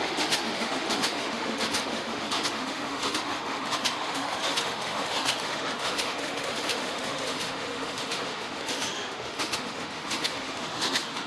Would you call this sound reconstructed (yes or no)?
yes